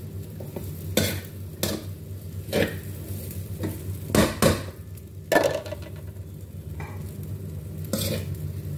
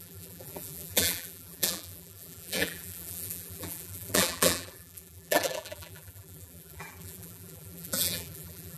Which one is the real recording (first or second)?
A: first